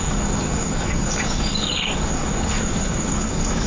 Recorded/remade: remade